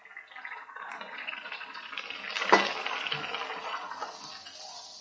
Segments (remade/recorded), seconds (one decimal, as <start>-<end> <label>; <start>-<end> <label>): 0.0-0.5 recorded; 0.5-1.9 remade; 1.9-3.5 recorded; 3.5-4.1 remade; 4.1-5.0 recorded